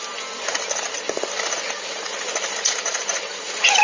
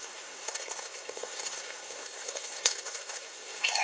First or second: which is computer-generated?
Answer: second